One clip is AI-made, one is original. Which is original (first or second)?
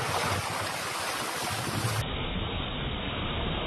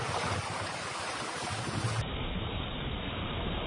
first